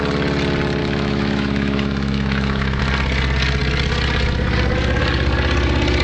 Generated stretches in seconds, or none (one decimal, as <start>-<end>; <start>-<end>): 0.8-2.8